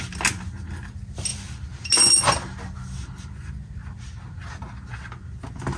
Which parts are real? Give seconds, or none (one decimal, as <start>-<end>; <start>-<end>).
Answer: 0.0-5.8

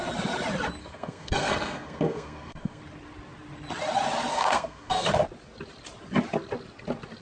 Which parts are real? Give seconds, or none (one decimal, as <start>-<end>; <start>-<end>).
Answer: 0.0-0.8; 2.8-4.3; 5.1-7.2